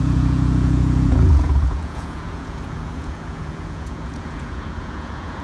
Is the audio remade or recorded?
remade